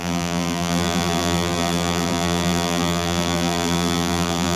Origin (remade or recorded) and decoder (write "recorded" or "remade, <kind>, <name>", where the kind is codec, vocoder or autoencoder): remade, vocoder, BigVGAN v2